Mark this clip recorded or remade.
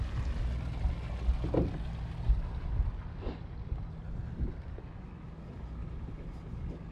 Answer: recorded